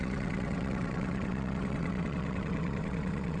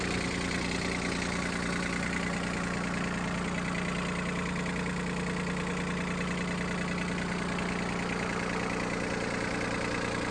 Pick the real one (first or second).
second